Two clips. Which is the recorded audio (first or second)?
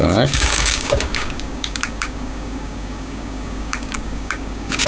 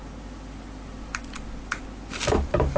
second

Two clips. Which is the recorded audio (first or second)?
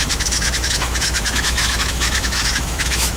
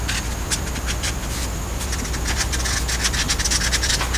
second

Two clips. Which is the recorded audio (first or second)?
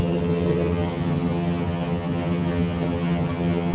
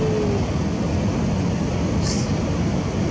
second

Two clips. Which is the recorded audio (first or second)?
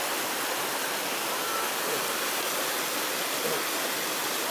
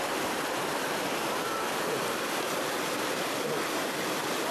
first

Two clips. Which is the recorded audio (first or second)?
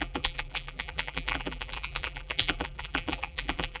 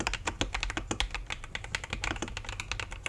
second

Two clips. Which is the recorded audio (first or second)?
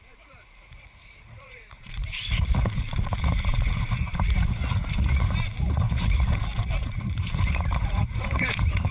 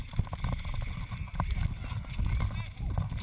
second